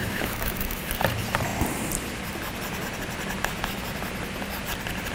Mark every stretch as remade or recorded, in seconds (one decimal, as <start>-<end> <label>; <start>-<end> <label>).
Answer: 0.0-0.8 remade; 0.8-5.1 recorded